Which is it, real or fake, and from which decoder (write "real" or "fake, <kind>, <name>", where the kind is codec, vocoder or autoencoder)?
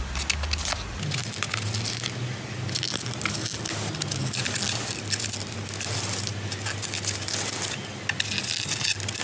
real